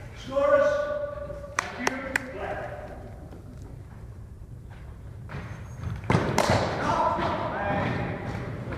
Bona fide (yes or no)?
no